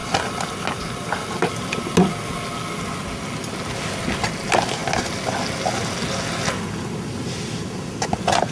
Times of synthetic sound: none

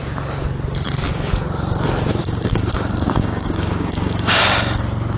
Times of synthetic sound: 2.2-4.4 (codec, DAC)

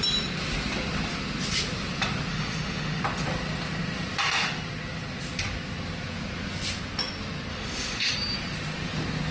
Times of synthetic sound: 2.3-3.0 (autoencoder, DAC-VAE); 7.5-8.1

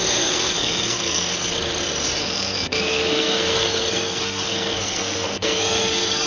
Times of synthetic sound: 0.0-1.3 (codec, SNAC); 2.2-6.3

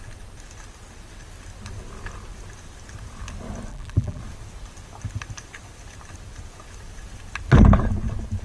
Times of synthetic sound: 3.7-4.2 (vocoder, BigVGAN v2)

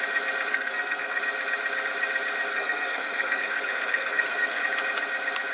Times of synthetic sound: 0.5-1.2 (codec, SNAC); 2.5-4.6

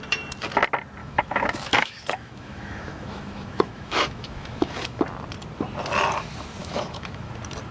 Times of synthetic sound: 1.0-5.0 (autoencoder, DAC-VAE); 6.6-7.3

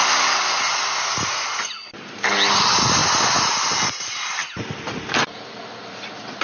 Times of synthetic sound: none